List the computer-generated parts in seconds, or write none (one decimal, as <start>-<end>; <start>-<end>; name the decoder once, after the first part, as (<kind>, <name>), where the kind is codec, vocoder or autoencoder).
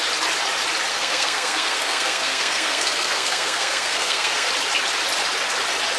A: 0.9-4.5 (codec, SNAC)